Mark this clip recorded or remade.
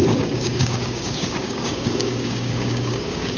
remade